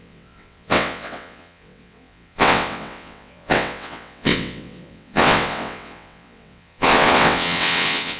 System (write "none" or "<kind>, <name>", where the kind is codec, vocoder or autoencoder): vocoder, WaveNeXt